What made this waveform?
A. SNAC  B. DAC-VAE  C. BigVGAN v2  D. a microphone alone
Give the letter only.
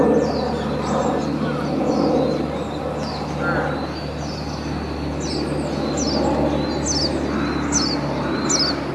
D